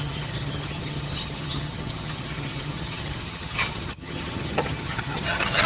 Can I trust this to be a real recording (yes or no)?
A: no